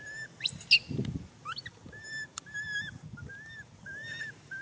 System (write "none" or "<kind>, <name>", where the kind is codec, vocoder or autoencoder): none